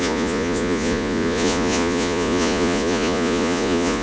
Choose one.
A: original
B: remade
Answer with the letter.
B